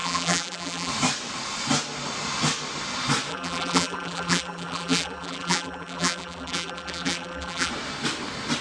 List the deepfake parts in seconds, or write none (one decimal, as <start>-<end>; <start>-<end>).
0.0-0.9; 3.3-7.7